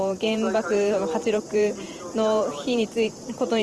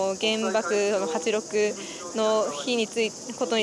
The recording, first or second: second